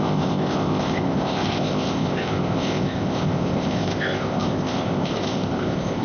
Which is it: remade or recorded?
remade